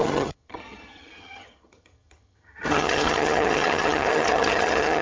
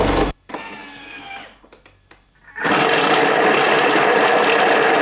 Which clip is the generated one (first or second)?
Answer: first